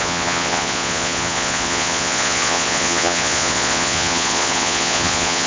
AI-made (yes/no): yes